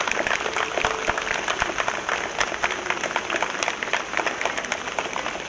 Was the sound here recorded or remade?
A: recorded